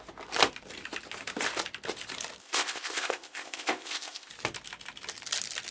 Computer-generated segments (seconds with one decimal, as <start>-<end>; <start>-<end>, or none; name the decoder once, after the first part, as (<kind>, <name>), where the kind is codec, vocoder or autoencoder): 2.4-4.3 (codec, ZipCodec)